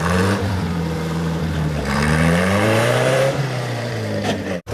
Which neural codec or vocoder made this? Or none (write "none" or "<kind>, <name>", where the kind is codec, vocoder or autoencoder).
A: vocoder, BigVGAN v2